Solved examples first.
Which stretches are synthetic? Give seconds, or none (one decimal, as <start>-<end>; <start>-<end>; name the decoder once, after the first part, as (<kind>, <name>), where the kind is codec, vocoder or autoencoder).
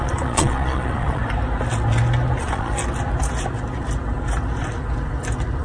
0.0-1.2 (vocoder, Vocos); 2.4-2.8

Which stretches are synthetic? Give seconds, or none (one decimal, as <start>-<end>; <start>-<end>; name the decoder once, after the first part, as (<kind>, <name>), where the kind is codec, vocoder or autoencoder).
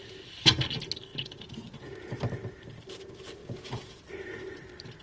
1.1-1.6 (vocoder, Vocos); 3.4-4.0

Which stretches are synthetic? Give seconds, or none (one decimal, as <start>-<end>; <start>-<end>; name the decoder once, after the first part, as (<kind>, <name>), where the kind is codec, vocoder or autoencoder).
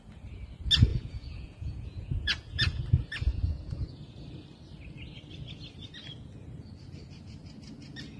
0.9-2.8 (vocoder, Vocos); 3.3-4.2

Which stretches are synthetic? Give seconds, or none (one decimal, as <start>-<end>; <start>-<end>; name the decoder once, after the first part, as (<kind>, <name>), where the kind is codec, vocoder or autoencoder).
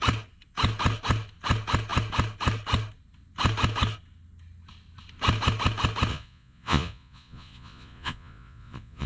6.1-9.1 (vocoder, Vocos)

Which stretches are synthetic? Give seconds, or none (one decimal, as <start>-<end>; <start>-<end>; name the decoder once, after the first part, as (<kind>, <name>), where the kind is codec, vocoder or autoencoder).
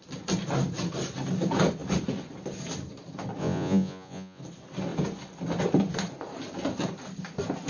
3.4-4.4 (vocoder, Vocos)